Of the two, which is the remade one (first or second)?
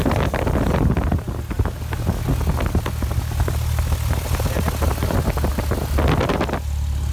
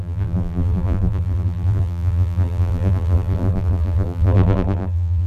second